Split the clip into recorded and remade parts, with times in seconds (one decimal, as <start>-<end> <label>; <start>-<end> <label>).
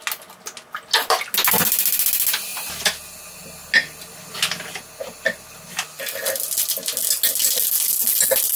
0.0-8.6 recorded